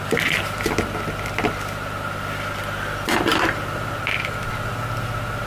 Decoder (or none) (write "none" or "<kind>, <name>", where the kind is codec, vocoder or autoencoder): none